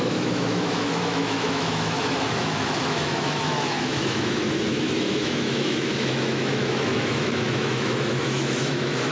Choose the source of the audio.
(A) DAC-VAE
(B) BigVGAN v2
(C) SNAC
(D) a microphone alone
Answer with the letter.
A